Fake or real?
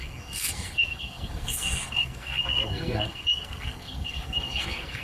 fake